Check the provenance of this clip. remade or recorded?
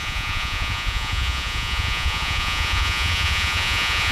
remade